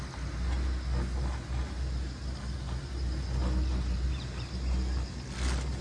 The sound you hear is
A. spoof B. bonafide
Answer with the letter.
B